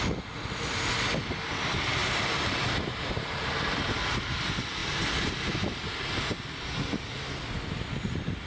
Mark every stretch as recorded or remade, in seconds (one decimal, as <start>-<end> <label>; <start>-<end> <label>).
0.0-2.0 recorded; 2.0-4.1 remade; 4.1-4.8 recorded; 4.8-5.3 remade; 5.3-8.5 recorded